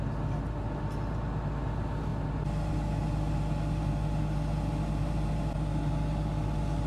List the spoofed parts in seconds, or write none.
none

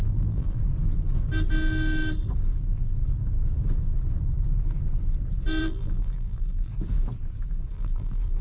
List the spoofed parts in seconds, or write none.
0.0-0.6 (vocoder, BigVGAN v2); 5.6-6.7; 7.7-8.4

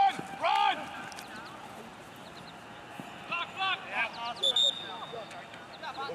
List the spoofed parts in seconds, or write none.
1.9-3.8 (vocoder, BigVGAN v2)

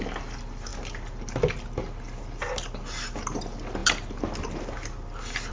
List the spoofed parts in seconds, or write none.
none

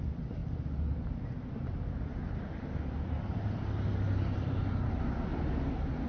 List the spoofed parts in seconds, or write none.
0.0-0.4 (vocoder, BigVGAN v2); 4.1-5.3